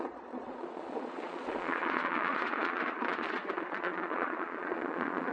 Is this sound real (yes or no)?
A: no